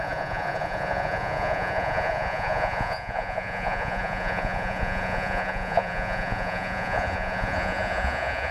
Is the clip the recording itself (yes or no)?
no